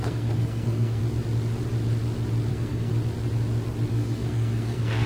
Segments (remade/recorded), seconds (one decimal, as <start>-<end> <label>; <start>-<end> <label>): 0.0-1.0 remade; 1.0-2.5 recorded; 2.5-2.9 remade; 2.9-3.9 recorded; 3.9-5.1 remade